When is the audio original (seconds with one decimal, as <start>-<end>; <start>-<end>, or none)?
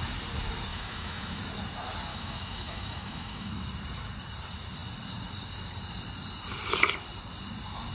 0.0-0.7; 1.4-2.1; 3.5-7.9